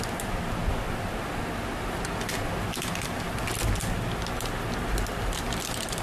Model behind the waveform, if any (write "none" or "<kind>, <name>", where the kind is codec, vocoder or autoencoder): none